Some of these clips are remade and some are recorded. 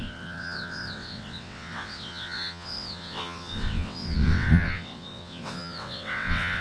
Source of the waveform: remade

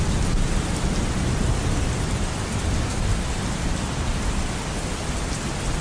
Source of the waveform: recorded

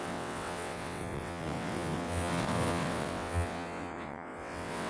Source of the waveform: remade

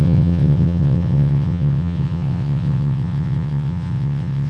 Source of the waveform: remade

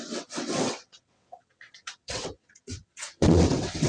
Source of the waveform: remade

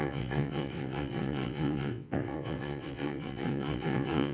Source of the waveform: remade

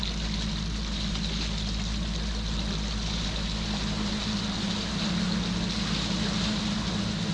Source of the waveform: recorded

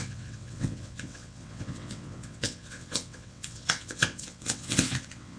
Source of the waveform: remade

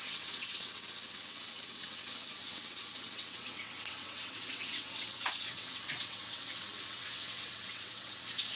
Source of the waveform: remade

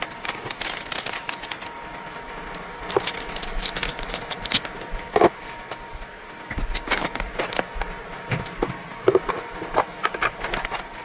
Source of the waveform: recorded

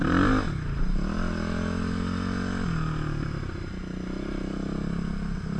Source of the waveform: recorded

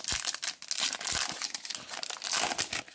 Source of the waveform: recorded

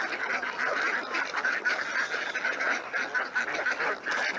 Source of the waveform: recorded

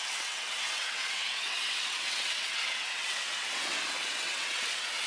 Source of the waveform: remade